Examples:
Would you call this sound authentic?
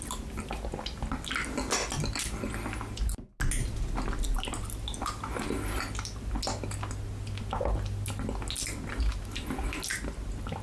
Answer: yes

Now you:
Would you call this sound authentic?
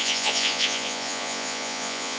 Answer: no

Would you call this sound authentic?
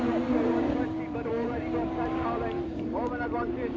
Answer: no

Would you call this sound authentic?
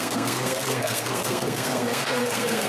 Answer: no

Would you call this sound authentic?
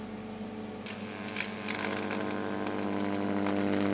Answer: yes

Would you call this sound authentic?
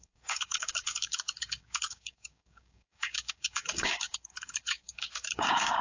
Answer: no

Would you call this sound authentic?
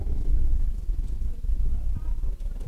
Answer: yes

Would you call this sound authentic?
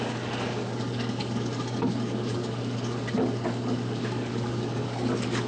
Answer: no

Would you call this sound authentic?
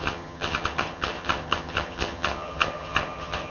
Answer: no